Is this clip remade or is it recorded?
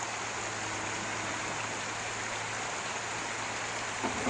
recorded